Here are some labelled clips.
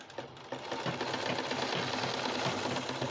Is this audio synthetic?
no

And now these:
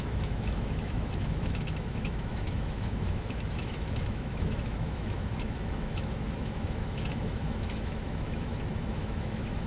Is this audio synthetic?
yes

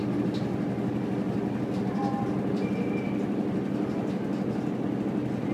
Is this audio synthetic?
no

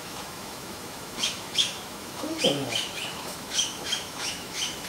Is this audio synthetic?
yes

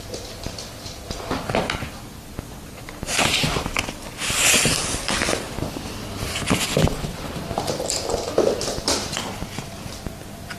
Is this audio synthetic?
no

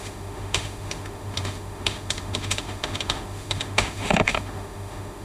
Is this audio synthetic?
yes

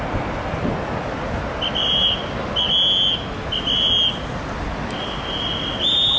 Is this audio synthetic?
no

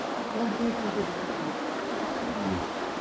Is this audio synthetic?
yes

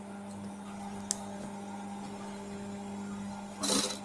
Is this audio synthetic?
no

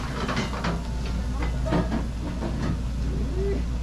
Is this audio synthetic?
no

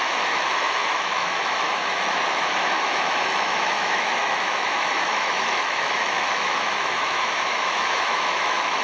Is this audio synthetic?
yes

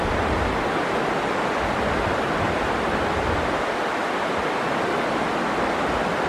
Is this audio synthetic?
no